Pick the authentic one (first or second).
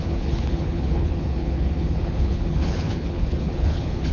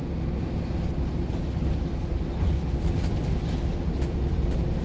second